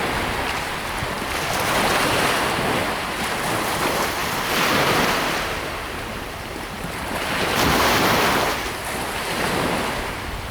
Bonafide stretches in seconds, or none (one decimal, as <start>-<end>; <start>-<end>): 0.0-4.2; 7.6-10.5